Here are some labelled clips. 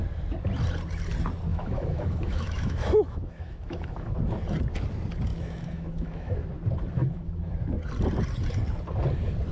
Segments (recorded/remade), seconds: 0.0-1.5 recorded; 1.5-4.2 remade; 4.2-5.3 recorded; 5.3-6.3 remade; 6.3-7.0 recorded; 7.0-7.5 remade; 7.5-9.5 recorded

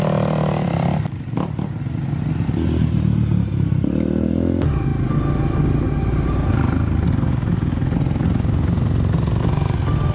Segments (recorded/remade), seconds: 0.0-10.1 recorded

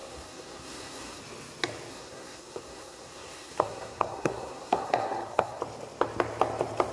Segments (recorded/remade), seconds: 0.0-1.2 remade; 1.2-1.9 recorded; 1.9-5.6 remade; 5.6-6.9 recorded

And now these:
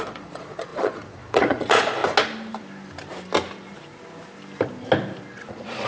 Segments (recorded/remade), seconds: 0.0-2.0 remade; 2.0-5.5 recorded; 5.5-5.9 remade

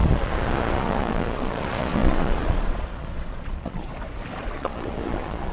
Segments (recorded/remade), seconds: 0.0-3.9 remade; 3.9-4.4 recorded; 4.4-5.5 remade

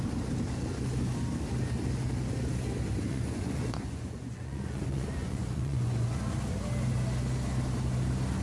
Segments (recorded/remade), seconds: 0.0-3.1 recorded; 3.1-6.2 remade; 6.2-8.4 recorded

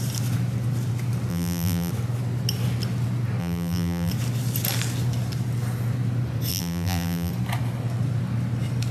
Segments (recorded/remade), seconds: 0.0-1.3 recorded; 1.3-1.9 remade; 1.9-3.4 recorded; 3.4-4.1 remade; 4.1-6.5 recorded; 6.5-7.3 remade; 7.3-8.9 recorded